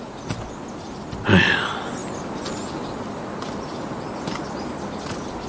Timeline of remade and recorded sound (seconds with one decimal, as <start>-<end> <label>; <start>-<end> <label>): 0.0-5.5 recorded